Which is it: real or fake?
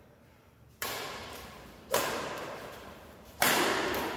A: fake